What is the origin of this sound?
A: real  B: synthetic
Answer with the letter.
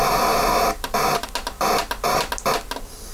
A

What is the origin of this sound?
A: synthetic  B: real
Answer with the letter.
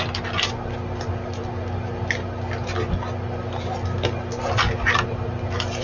B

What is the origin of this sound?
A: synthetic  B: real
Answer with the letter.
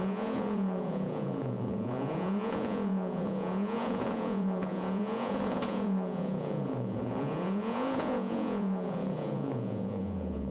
A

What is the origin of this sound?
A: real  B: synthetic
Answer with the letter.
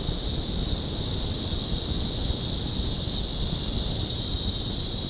A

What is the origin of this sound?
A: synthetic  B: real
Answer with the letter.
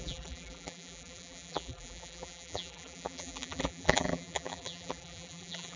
A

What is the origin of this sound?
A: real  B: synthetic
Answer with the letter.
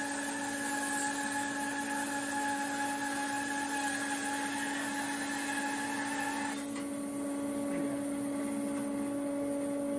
A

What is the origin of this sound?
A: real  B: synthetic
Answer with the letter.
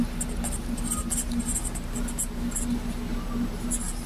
A